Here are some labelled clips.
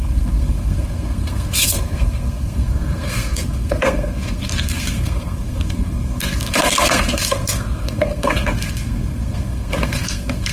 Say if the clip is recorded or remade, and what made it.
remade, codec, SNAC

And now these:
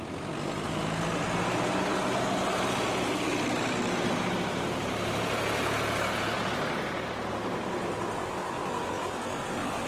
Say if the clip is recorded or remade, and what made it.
recorded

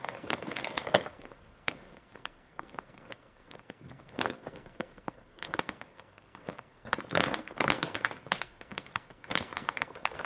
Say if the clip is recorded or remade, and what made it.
remade, codec, SNAC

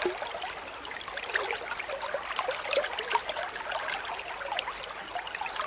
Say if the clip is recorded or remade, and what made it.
recorded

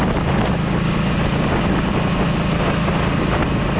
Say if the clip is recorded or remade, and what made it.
recorded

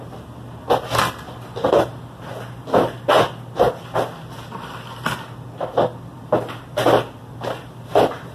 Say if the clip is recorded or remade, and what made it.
recorded